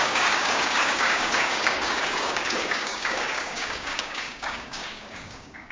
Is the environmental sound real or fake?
fake